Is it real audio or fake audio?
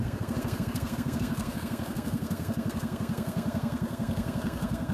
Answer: fake